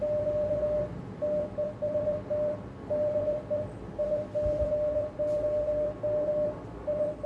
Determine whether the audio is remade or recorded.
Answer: recorded